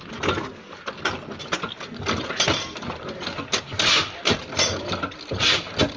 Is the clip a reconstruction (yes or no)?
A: no